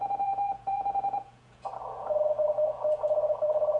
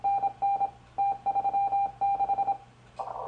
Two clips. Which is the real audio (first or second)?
second